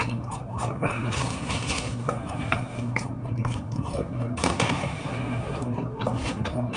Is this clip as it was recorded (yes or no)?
no